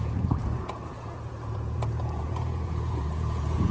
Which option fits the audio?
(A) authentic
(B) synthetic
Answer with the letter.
B